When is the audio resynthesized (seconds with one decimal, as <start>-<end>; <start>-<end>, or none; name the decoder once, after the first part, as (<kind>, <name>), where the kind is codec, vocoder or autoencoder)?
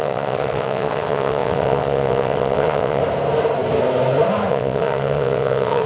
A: 0.0-3.0 (vocoder, WaveNeXt); 4.5-5.9